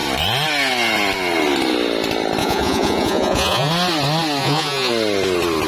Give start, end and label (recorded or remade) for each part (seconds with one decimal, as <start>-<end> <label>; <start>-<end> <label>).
0.0-2.4 recorded; 2.4-3.7 remade; 3.7-4.4 recorded; 4.4-4.9 remade; 4.9-5.7 recorded